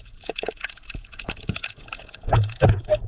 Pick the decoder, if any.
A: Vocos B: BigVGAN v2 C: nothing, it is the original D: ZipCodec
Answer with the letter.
A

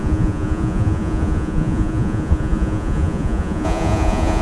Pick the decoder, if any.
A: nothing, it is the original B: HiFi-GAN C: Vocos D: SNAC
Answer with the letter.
C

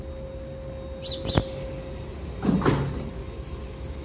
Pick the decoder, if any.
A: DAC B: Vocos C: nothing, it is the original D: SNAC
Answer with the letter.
C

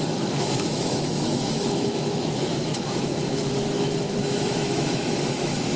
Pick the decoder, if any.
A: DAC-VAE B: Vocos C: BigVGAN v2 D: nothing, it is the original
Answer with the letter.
A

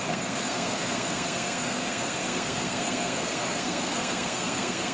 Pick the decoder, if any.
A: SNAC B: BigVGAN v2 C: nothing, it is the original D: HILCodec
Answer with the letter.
A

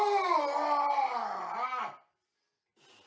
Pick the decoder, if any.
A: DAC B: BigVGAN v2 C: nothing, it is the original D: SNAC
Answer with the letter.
C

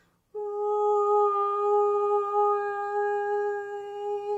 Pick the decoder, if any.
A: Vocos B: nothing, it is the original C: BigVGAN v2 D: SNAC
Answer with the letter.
B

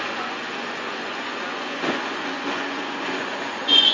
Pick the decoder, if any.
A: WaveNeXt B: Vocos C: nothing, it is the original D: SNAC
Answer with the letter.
B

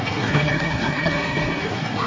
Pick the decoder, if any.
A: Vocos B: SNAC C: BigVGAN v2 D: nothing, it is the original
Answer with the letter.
B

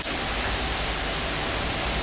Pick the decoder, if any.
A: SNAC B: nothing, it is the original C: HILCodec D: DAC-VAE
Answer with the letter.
B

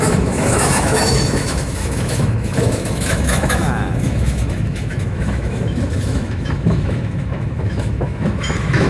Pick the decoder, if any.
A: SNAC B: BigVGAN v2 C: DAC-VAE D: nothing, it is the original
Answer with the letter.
C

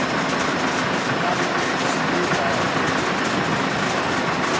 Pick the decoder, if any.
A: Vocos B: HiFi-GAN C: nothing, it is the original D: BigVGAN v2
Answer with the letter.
C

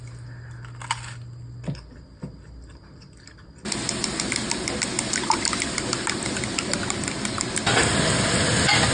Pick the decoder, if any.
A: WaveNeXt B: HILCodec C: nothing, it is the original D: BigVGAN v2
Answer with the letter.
C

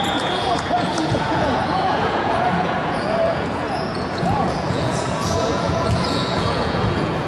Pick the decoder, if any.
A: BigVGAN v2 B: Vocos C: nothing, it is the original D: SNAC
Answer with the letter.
B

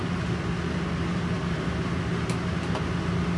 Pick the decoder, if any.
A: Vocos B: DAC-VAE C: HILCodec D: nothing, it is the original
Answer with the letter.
D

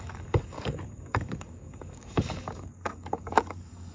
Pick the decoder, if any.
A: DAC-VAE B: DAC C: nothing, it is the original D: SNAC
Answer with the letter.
B